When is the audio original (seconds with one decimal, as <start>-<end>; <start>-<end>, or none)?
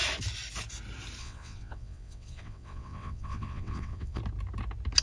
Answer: 0.0-1.2; 4.2-5.0